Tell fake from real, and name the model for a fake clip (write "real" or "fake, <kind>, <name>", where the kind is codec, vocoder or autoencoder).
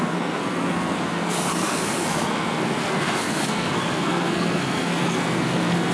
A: fake, codec, SNAC